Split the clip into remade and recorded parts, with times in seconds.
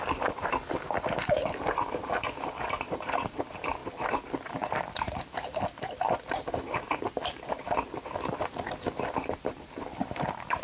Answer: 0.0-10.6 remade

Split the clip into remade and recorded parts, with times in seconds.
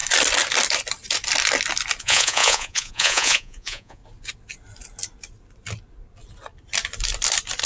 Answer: 0.0-2.0 recorded; 2.0-4.0 remade; 4.0-7.7 recorded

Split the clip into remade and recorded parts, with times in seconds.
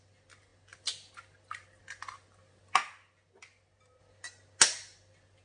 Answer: 0.0-5.4 recorded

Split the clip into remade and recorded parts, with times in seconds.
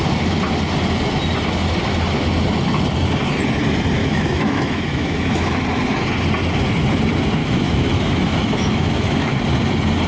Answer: 0.0-4.0 recorded; 4.0-5.6 remade; 5.6-7.4 recorded; 7.4-9.4 remade; 9.4-10.1 recorded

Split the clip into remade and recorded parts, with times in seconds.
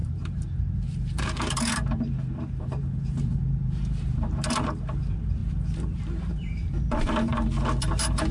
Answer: 0.0-8.3 remade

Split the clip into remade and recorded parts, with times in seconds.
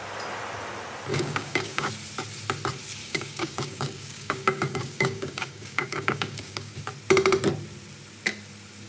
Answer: 0.0-1.1 recorded; 1.1-1.9 remade; 1.9-3.0 recorded; 3.0-6.8 remade; 6.8-8.9 recorded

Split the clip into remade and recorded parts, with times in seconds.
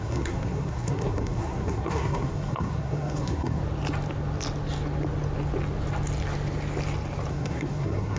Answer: 0.0-3.6 remade; 3.6-7.3 recorded; 7.3-8.2 remade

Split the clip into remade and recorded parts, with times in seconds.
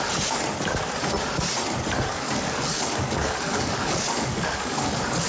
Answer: 0.0-2.1 recorded; 2.1-5.3 remade